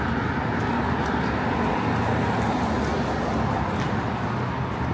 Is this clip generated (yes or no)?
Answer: no